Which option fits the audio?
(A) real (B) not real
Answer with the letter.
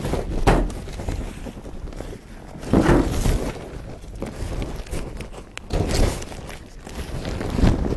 A